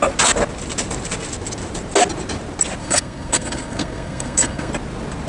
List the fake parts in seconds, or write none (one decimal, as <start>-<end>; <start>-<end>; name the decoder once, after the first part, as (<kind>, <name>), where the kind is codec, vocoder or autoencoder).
2.8-4.7 (codec, SNAC)